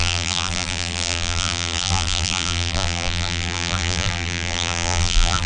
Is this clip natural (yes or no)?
no